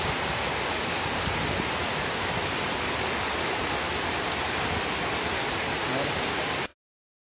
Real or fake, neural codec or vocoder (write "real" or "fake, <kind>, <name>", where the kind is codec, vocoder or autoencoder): real